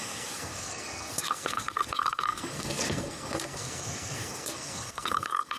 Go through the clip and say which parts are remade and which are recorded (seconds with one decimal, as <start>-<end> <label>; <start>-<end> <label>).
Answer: 0.0-5.6 remade